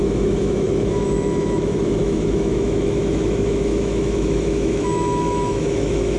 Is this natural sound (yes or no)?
no